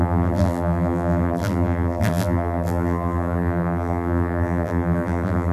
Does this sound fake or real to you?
fake